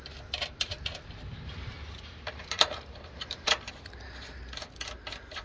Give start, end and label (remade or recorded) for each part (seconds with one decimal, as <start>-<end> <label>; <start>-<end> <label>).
0.0-1.8 recorded; 1.8-3.7 remade; 3.7-5.4 recorded

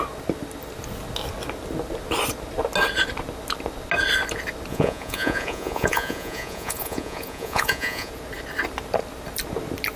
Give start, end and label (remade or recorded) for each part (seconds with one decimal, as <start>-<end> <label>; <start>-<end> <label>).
0.0-4.7 recorded; 4.7-8.1 remade; 8.1-10.0 recorded

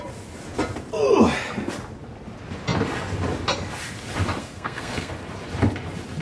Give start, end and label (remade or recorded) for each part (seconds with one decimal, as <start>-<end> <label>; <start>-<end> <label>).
0.0-4.4 recorded; 4.4-5.1 remade; 5.1-6.2 recorded

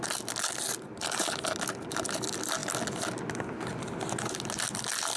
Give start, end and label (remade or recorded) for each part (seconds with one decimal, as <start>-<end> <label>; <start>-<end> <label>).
0.0-5.2 recorded

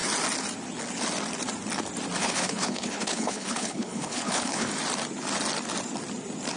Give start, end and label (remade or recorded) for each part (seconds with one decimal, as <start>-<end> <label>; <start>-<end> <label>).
0.0-2.2 recorded; 2.2-4.7 remade; 4.7-6.6 recorded

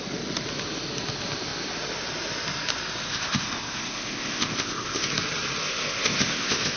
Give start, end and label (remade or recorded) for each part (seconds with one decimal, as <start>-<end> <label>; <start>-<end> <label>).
0.0-3.1 recorded; 3.1-5.1 remade; 5.1-5.6 recorded; 5.6-6.8 remade

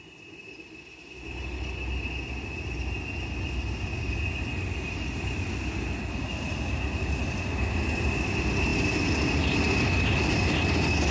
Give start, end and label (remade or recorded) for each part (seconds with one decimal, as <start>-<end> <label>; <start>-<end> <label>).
0.0-11.1 recorded

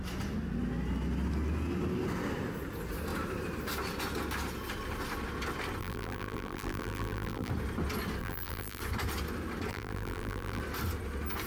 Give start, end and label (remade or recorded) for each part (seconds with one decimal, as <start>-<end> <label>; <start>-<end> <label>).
0.0-5.8 recorded; 5.8-7.5 remade; 7.5-8.2 recorded; 8.2-8.8 remade; 8.8-9.7 recorded; 9.7-10.6 remade; 10.6-11.5 recorded